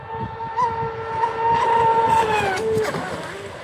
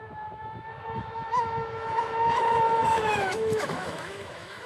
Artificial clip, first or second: second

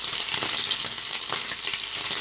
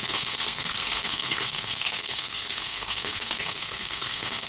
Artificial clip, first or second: second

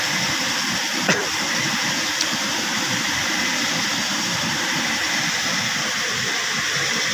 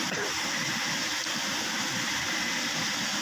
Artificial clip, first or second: first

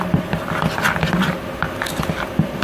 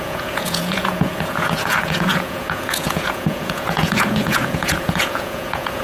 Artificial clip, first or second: second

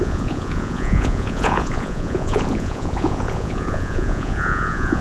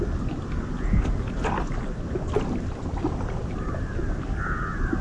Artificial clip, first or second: first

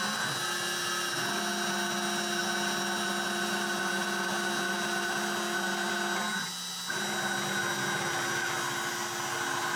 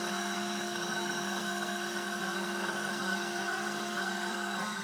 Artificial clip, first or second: second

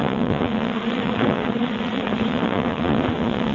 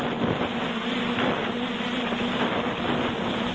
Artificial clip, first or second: first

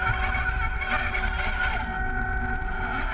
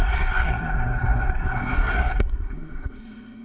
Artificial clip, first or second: second